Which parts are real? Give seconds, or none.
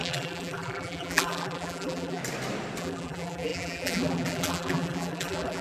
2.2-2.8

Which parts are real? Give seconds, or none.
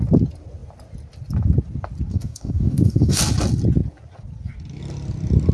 0.0-2.1; 3.2-5.5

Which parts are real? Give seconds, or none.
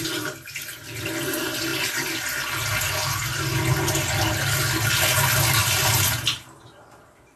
0.0-7.4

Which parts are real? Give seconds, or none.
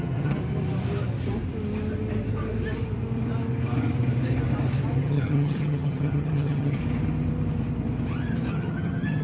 0.4-5.0; 6.8-8.5